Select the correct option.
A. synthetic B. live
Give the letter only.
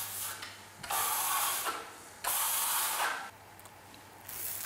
B